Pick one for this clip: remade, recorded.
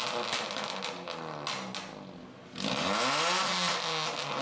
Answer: recorded